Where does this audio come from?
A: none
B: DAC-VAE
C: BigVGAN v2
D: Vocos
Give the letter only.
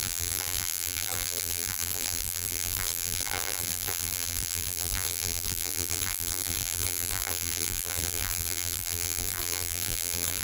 C